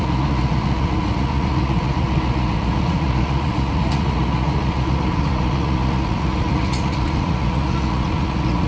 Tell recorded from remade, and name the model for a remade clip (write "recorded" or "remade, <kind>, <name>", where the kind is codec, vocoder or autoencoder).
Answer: remade, vocoder, Vocos